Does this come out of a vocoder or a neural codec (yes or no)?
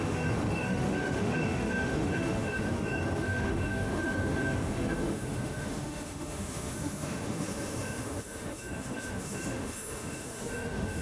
yes